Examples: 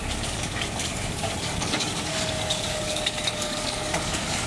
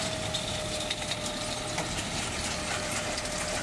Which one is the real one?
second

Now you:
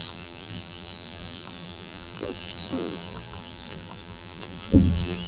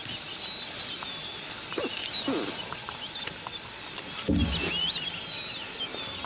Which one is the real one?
second